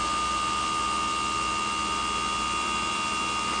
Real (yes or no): no